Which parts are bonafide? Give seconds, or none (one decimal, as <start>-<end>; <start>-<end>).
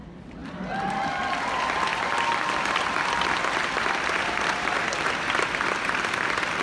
0.0-6.6